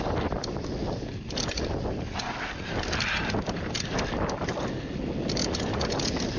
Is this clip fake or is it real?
real